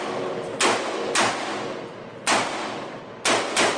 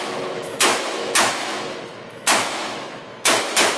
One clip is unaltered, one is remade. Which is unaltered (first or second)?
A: first